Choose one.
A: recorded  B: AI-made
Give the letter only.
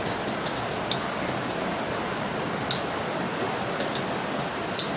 A